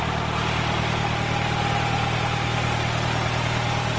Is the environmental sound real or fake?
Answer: real